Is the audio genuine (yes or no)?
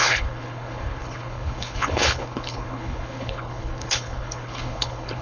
no